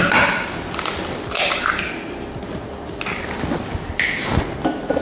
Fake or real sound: real